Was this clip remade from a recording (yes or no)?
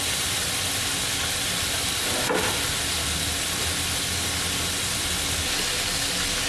no